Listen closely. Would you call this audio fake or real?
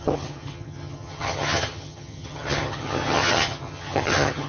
fake